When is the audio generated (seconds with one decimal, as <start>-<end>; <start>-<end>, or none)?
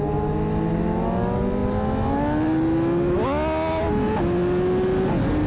none